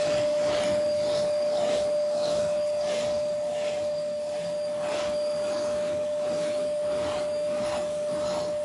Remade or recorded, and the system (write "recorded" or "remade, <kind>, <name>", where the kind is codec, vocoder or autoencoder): remade, codec, DAC